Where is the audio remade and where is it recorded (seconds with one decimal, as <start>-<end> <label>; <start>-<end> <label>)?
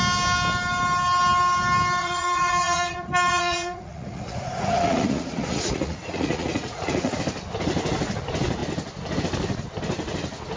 0.0-2.0 recorded; 2.0-7.2 remade; 7.2-10.6 recorded